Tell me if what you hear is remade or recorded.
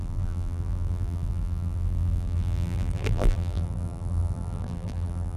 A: remade